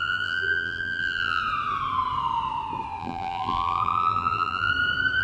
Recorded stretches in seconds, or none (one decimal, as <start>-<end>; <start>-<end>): 1.4-3.0; 4.7-5.2

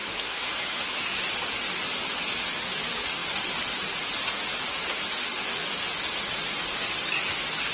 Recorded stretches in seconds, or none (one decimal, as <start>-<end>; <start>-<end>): 1.2-7.7

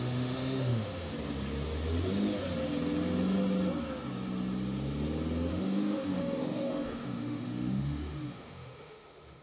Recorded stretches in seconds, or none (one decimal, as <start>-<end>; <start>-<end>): 1.1-5.5

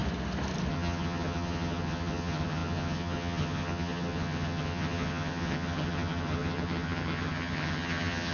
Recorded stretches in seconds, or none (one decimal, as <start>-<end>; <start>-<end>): 0.0-0.7

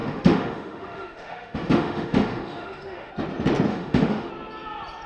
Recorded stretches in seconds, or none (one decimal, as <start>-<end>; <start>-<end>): 3.1-3.7; 4.3-5.1

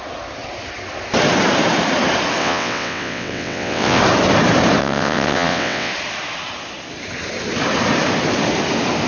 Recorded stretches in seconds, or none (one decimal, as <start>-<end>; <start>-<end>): 0.0-2.4; 4.0-4.8; 5.9-9.1

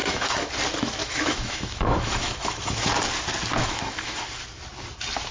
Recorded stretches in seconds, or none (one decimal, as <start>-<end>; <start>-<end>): 0.5-1.0; 2.9-3.6; 4.2-5.3